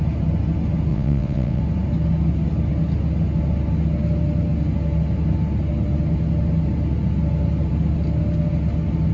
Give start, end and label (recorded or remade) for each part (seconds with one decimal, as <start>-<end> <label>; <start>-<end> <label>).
0.0-0.9 recorded; 0.9-1.6 remade; 1.6-9.1 recorded